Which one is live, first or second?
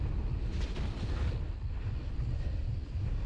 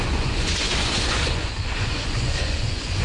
first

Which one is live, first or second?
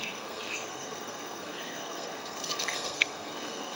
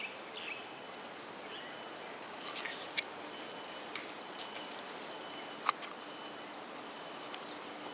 second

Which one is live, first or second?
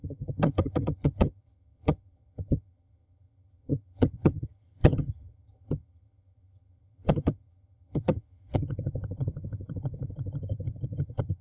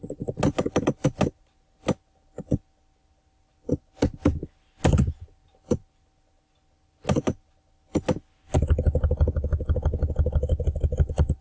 second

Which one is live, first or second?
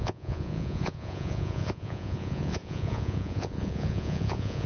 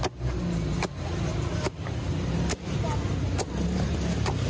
second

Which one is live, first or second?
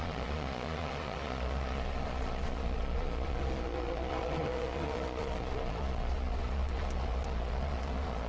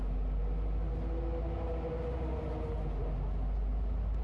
second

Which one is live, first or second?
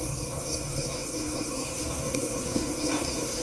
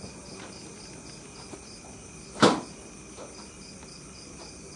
second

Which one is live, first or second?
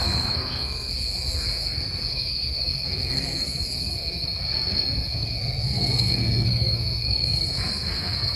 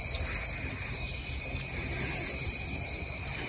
second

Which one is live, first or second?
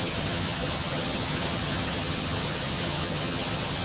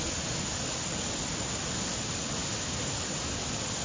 second